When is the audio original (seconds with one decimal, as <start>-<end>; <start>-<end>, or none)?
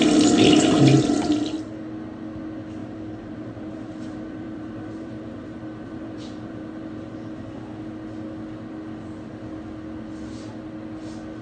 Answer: 0.0-2.8; 7.8-11.4